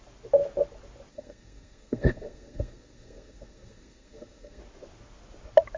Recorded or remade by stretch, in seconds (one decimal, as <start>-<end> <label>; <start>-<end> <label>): 0.0-1.1 recorded; 1.1-4.6 remade; 4.6-5.8 recorded